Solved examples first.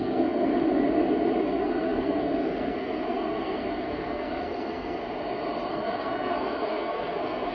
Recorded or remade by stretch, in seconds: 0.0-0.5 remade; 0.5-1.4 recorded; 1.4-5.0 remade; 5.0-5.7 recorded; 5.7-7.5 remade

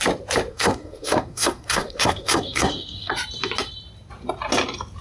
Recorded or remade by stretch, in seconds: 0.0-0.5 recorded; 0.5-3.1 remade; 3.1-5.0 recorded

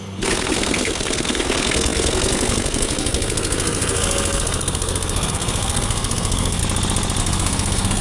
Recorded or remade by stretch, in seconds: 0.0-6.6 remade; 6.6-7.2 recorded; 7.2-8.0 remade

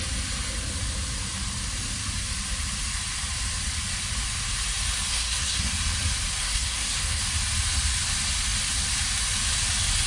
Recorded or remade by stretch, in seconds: 0.0-5.1 recorded; 5.1-5.7 remade; 5.7-6.4 recorded; 6.4-7.2 remade; 7.2-10.1 recorded

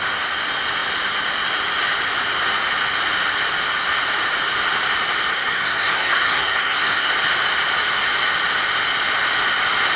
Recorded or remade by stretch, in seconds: 0.0-5.3 recorded; 5.3-7.1 remade; 7.1-10.0 recorded

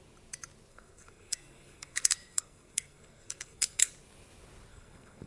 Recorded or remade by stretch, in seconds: 0.0-0.7 recorded; 0.7-3.9 remade; 3.9-4.7 recorded; 4.7-5.3 remade

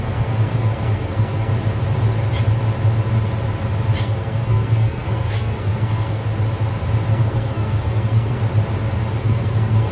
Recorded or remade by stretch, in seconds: 0.0-1.5 remade; 1.5-4.0 recorded; 4.0-6.2 remade; 6.2-7.1 recorded; 7.1-8.4 remade; 8.4-9.2 recorded; 9.2-9.9 remade